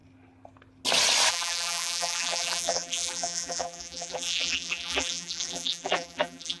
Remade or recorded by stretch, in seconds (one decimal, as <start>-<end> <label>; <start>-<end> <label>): 0.0-1.3 recorded; 1.3-6.6 remade